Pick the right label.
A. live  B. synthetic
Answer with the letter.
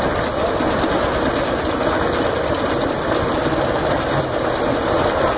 A